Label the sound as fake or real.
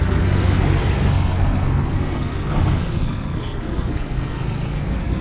fake